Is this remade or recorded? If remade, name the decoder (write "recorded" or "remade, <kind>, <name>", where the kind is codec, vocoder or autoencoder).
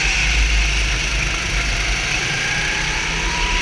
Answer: recorded